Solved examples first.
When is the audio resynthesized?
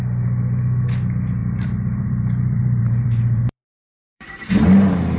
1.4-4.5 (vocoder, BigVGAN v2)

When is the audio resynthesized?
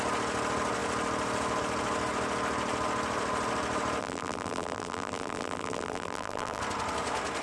4.0-6.6 (vocoder, BigVGAN v2)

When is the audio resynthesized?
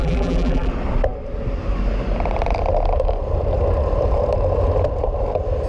0.0-0.7 (vocoder, BigVGAN v2)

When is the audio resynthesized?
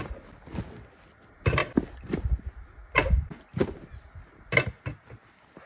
1.6-2.2 (vocoder, BigVGAN v2); 3.0-4.0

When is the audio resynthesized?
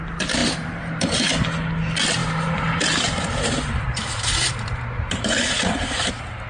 0.4-1.3 (vocoder, BigVGAN v2); 2.2-6.1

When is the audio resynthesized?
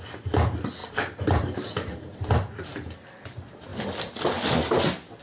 0.8-2.3 (vocoder, BigVGAN v2)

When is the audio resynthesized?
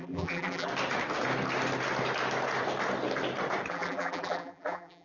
0.0-0.7 (vocoder, BigVGAN v2); 3.7-5.0